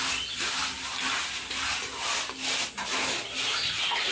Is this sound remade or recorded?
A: recorded